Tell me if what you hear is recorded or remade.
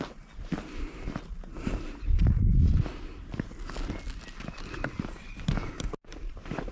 recorded